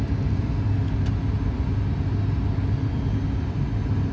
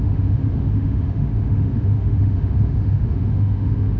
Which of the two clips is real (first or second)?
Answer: first